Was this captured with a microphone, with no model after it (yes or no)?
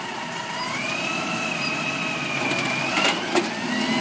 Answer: yes